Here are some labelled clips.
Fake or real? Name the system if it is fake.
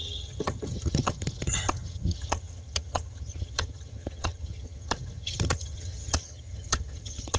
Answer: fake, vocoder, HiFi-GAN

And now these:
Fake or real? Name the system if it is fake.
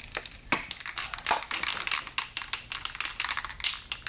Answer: real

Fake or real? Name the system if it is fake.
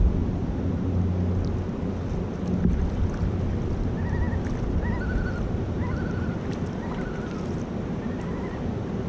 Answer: real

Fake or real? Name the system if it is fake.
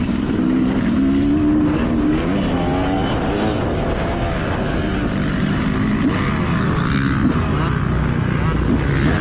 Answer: real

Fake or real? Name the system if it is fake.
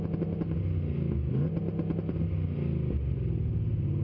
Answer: real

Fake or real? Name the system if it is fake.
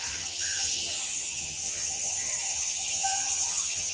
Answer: fake, vocoder, HiFi-GAN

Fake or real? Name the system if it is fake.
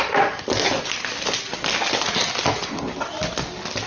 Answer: real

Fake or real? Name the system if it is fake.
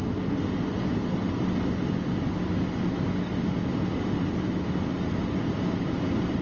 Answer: real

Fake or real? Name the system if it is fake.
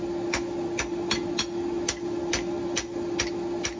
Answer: real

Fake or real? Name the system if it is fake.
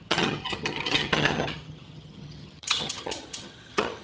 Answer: fake, vocoder, HiFi-GAN